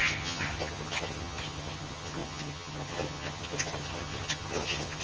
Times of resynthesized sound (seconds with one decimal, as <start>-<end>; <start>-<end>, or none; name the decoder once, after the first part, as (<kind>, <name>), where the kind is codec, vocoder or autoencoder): 0.0-5.0 (vocoder, HiFi-GAN)